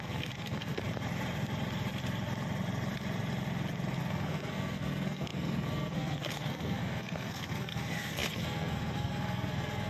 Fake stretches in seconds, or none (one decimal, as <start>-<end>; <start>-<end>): 0.0-0.8; 4.0-9.9